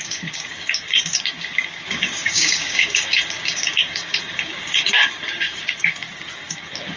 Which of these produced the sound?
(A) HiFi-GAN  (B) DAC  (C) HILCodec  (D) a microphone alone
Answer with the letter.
B